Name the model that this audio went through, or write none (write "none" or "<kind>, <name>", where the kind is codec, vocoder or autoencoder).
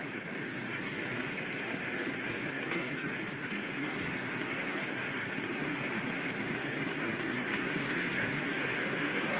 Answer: codec, SNAC